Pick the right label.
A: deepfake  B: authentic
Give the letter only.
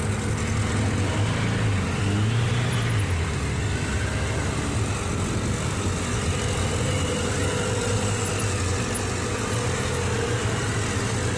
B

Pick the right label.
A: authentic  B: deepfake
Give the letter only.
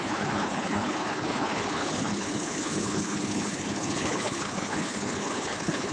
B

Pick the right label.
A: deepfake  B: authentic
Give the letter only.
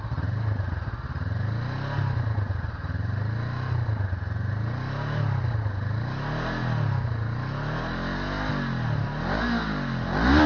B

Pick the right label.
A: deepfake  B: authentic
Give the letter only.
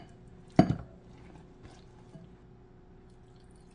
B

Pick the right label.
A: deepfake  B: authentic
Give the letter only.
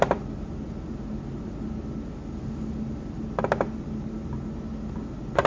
B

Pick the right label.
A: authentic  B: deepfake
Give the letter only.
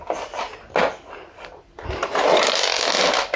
A